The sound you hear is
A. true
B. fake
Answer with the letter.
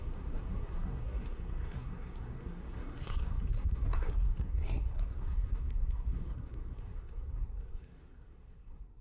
B